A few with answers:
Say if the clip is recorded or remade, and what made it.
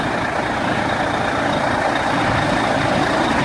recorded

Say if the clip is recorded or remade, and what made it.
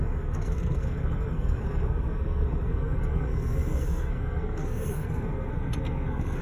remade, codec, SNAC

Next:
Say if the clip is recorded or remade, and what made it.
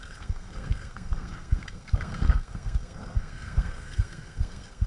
remade, codec, SNAC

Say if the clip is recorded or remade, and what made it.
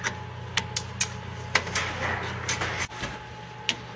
recorded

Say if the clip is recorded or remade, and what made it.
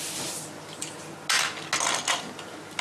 recorded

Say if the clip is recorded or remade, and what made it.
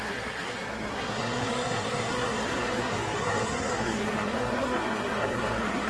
remade, codec, SNAC